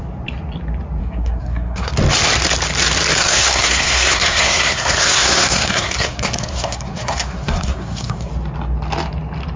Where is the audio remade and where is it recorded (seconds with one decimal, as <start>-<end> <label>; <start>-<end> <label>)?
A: 0.0-1.0 recorded; 1.0-1.9 remade; 1.9-3.2 recorded; 3.2-8.3 remade; 8.3-9.6 recorded